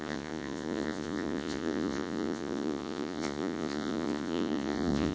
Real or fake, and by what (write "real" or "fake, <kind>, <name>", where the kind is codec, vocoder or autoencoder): fake, vocoder, Vocos